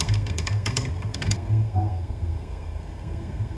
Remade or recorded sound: remade